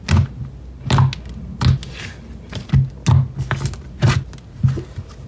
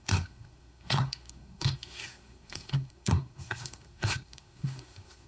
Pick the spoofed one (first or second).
second